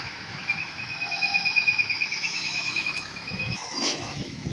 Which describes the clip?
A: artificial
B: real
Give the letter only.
A